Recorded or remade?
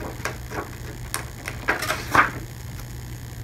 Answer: recorded